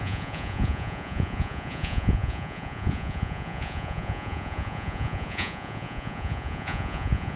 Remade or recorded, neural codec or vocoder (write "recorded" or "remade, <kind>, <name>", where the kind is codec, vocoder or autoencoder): remade, vocoder, Vocos